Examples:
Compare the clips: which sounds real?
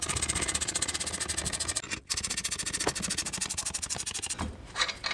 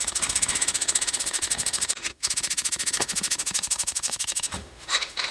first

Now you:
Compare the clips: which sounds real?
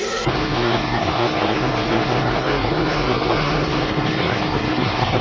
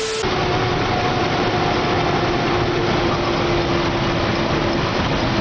second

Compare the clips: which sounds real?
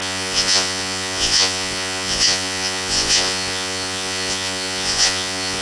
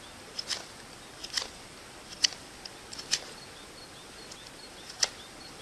second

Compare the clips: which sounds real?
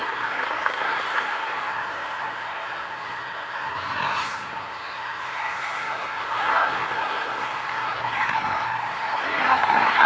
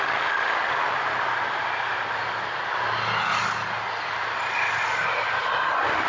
second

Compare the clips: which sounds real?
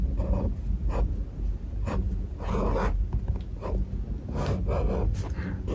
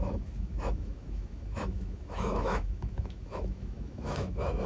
first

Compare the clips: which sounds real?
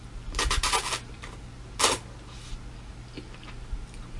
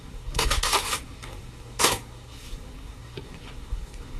first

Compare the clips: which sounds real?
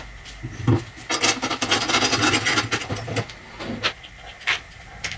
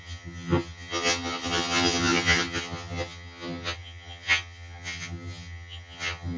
first